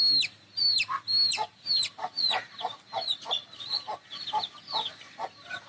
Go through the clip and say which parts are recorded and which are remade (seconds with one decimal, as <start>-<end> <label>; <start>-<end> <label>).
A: 0.0-5.7 recorded